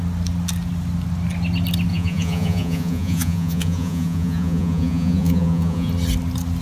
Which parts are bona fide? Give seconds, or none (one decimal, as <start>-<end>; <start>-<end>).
0.0-1.9; 5.9-6.6